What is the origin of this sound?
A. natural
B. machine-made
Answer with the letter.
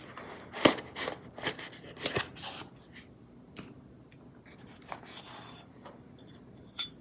A